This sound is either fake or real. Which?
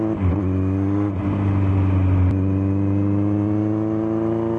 real